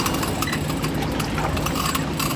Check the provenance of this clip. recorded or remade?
recorded